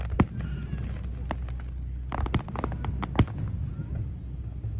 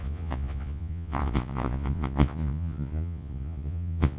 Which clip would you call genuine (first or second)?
first